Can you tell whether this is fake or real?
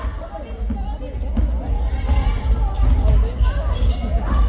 real